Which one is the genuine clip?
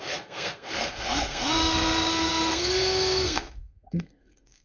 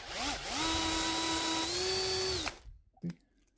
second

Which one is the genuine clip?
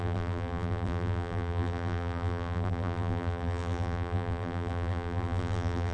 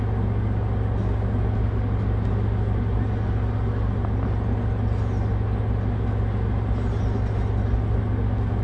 second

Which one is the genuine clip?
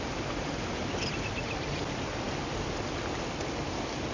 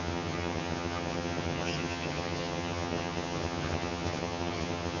first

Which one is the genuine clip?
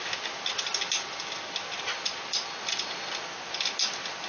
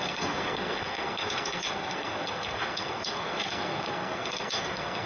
first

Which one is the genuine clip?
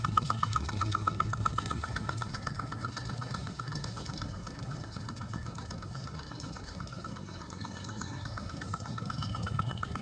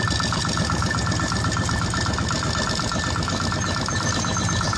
second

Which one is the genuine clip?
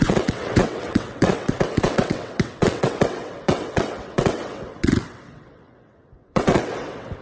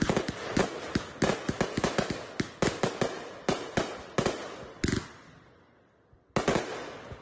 second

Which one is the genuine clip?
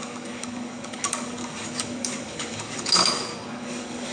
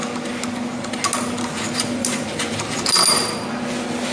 second